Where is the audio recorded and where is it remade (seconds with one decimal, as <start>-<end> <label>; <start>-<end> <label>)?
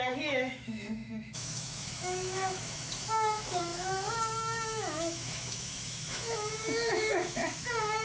0.0-8.0 remade